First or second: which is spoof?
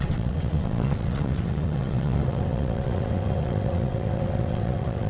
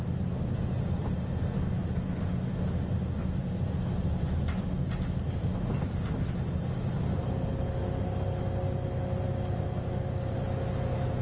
first